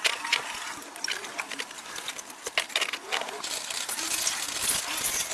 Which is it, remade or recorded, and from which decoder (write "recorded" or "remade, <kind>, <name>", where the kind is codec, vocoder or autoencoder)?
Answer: recorded